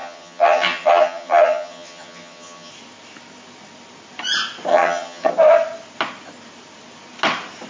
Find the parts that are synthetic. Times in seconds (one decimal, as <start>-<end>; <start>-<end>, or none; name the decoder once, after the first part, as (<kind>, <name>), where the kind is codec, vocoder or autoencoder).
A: 0.0-2.7 (vocoder, HiFi-GAN); 4.7-5.3

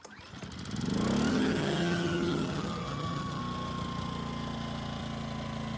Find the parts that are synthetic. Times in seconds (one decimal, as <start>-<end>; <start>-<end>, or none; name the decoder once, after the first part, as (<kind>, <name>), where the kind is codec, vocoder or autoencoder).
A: 1.3-3.4 (vocoder, HiFi-GAN)

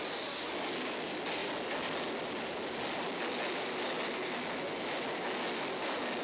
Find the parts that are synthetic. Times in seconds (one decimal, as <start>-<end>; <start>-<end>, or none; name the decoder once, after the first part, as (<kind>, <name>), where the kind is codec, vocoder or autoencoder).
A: none

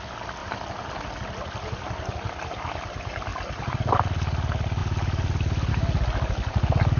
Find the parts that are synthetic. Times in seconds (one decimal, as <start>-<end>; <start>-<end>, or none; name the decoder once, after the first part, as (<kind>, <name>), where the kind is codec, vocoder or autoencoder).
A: none

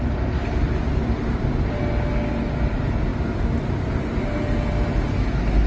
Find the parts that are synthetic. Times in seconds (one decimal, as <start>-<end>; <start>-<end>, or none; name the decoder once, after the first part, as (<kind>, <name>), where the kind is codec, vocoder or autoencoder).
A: none

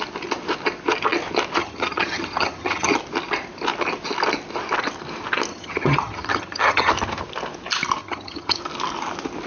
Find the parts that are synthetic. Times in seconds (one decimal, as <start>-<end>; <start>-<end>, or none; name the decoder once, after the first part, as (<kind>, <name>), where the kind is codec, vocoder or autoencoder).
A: 1.6-2.9 (vocoder, HiFi-GAN); 5.5-6.9; 8.0-8.6

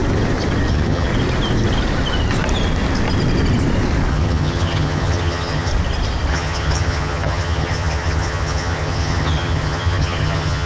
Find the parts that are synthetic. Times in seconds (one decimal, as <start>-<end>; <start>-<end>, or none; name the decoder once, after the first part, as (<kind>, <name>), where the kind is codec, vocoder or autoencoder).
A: 0.7-1.1 (vocoder, HiFi-GAN); 4.1-5.7; 6.3-10.7